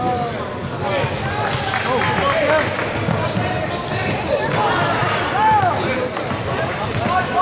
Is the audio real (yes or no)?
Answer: yes